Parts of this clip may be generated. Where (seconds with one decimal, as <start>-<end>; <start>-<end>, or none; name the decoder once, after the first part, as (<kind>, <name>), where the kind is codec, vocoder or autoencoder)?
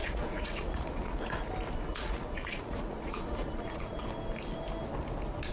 0.0-1.3 (vocoder, Vocos); 1.9-4.0